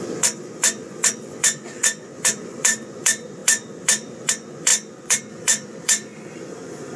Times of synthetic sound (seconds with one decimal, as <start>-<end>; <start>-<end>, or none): 0.0-7.0